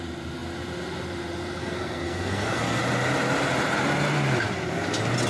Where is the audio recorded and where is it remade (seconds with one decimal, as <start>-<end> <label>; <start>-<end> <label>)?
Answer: 0.0-1.6 recorded; 1.6-2.8 remade; 2.8-5.3 recorded